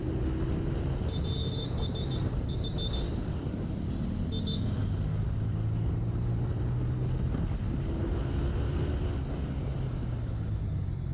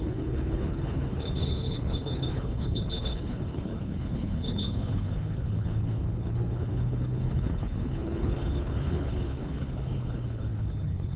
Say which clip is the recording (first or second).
first